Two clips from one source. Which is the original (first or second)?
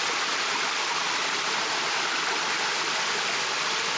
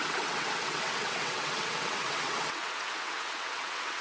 first